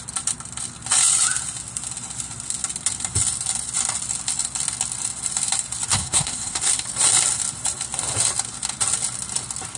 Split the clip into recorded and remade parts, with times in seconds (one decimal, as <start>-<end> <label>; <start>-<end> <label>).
0.0-5.9 recorded; 5.9-6.7 remade; 6.7-9.8 recorded